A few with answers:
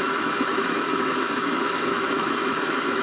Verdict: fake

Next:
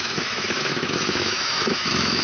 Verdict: fake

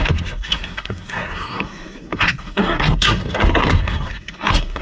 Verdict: fake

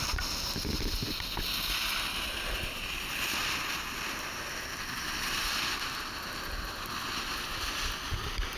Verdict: real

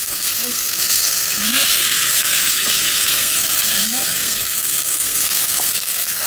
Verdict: fake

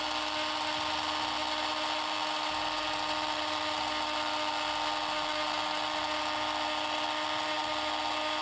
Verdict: real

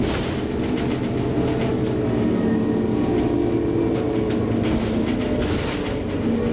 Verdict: real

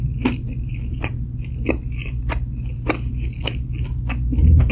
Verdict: real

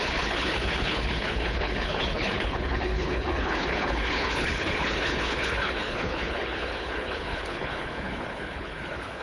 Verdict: fake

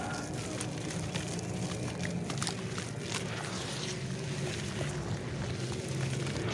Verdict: real